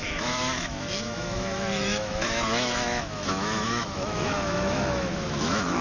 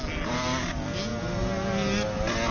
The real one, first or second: second